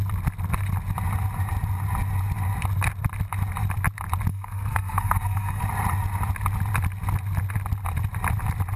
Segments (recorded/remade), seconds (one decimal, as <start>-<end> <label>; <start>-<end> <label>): 0.0-4.3 recorded; 4.3-5.6 remade; 5.6-8.8 recorded